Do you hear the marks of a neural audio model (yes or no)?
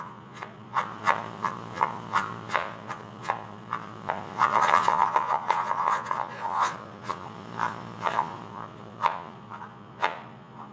yes